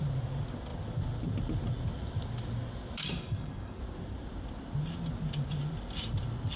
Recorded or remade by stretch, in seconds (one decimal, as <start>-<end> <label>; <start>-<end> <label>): 0.0-3.0 recorded; 3.0-3.8 remade; 3.8-6.6 recorded